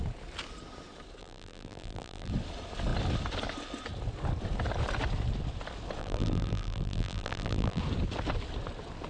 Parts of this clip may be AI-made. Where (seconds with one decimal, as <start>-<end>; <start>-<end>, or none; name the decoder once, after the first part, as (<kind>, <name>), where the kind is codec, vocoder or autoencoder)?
1.2-2.3 (vocoder, BigVGAN v2); 6.0-7.8